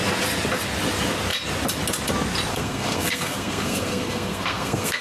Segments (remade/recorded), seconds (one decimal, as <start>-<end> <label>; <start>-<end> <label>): 0.0-2.5 recorded; 2.5-5.0 remade